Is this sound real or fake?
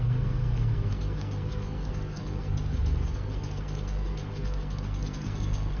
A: fake